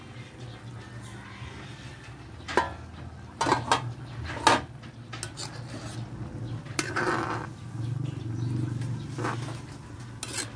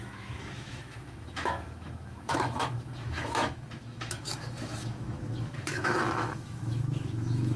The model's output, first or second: second